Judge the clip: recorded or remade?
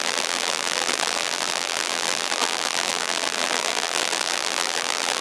remade